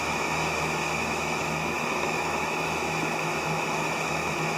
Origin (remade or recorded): remade